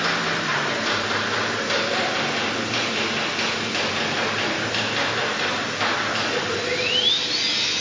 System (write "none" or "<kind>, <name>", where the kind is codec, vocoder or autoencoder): none